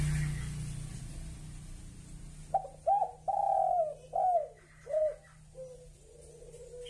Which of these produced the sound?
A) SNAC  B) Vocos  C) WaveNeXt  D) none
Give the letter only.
D